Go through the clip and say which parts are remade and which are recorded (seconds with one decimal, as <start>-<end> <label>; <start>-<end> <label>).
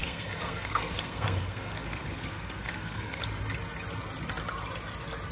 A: 0.0-3.2 remade; 3.2-5.3 recorded